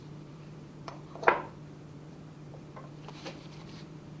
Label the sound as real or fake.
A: fake